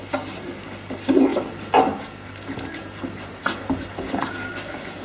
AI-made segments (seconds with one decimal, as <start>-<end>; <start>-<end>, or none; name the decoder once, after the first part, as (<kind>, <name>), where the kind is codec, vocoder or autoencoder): none